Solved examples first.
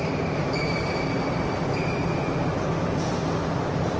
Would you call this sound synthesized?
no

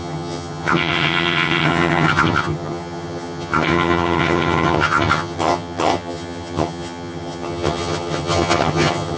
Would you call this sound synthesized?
yes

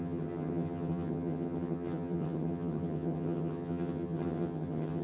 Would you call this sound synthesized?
yes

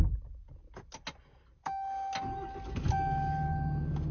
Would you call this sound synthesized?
no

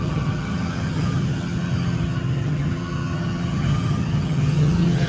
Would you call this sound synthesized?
yes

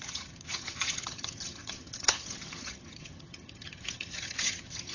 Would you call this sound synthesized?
yes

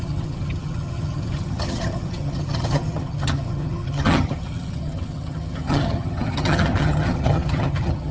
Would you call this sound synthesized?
yes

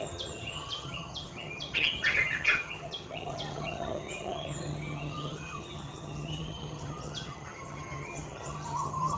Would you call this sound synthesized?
yes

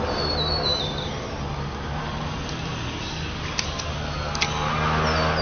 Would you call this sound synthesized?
no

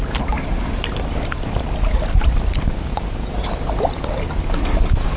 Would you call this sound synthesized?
no